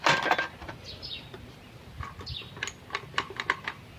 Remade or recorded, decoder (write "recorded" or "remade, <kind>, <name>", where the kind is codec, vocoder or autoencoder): recorded